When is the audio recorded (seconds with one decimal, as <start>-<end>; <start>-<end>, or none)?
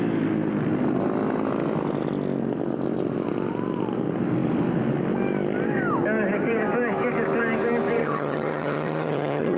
0.0-8.0